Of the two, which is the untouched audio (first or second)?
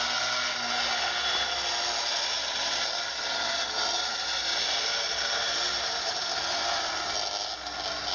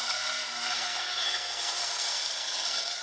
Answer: first